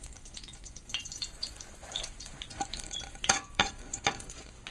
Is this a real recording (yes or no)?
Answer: no